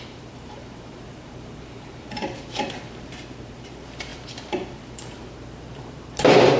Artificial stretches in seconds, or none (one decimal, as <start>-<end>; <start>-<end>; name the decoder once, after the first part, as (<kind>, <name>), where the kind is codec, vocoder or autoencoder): 0.0-6.6 (vocoder, BigVGAN v2)